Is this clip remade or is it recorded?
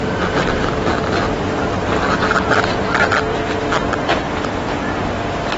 recorded